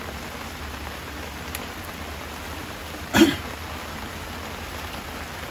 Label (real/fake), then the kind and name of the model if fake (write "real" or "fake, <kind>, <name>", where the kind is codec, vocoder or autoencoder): real